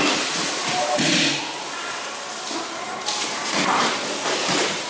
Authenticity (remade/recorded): recorded